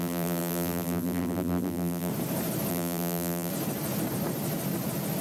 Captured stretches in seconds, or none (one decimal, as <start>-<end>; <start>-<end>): 2.1-2.7; 3.5-5.2